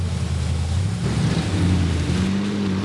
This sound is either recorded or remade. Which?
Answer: recorded